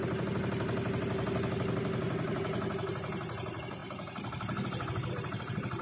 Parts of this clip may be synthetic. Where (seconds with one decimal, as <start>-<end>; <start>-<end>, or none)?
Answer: 3.8-5.1